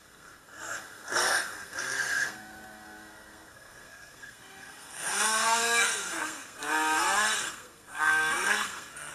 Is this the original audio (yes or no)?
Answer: no